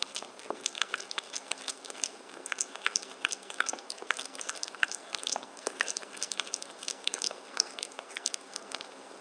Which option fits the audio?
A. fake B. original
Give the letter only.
A